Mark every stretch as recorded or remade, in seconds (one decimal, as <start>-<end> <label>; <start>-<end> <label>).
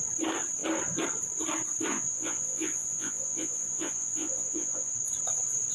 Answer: 0.0-1.9 recorded; 1.9-4.9 remade; 4.9-5.7 recorded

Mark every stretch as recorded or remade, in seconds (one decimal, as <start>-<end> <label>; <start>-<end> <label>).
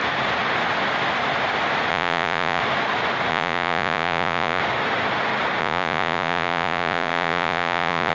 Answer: 0.0-1.9 recorded; 1.9-2.6 remade; 2.6-3.3 recorded; 3.3-4.6 remade; 4.6-5.6 recorded; 5.6-8.1 remade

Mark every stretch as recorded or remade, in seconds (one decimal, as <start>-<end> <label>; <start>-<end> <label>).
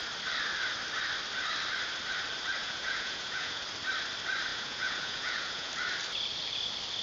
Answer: 0.0-2.6 recorded; 2.6-3.6 remade; 3.6-4.5 recorded; 4.5-5.7 remade; 5.7-7.0 recorded